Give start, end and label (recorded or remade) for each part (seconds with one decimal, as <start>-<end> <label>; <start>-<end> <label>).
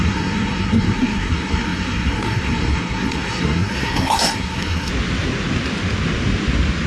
0.0-4.9 remade; 4.9-6.9 recorded